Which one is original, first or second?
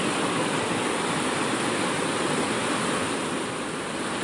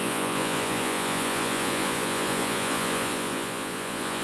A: first